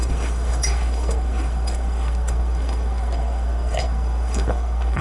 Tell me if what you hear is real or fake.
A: fake